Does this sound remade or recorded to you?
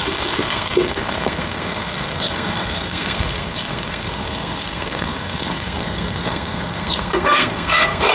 remade